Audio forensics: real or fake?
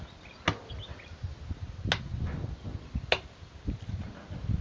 real